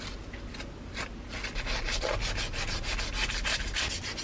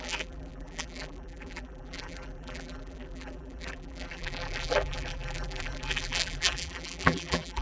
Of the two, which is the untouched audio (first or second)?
first